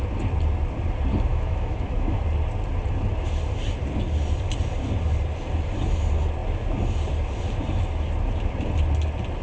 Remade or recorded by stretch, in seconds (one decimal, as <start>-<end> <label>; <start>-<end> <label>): 0.0-1.3 recorded; 1.3-2.2 remade; 2.2-9.4 recorded